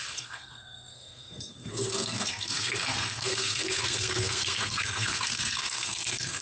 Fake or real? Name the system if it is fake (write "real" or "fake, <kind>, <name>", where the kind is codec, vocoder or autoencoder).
fake, codec, SNAC